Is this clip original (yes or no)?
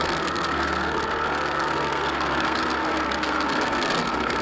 no